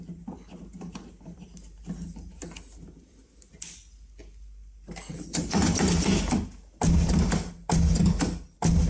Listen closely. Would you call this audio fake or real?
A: real